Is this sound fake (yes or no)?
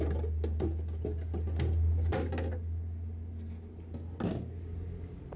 no